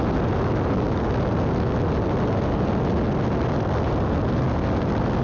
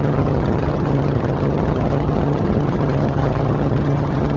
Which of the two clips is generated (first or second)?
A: second